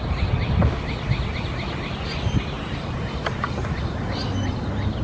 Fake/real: real